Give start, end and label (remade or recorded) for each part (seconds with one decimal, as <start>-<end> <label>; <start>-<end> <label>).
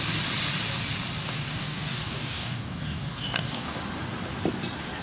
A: 0.0-1.2 recorded; 1.2-3.8 remade; 3.8-5.0 recorded